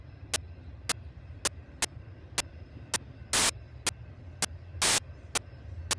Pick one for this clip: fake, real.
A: real